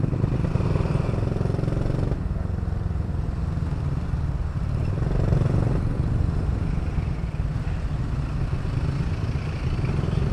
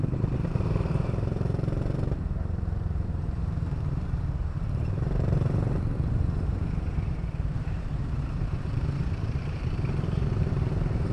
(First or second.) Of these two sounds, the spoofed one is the second